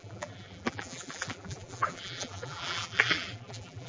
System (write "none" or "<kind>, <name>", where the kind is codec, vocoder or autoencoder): vocoder, BigVGAN v2